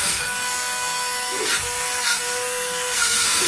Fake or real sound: fake